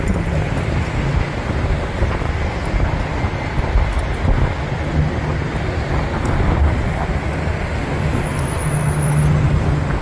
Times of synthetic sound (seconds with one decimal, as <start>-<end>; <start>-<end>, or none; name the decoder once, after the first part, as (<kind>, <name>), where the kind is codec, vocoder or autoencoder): none